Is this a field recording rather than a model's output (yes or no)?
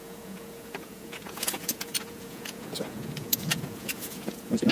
no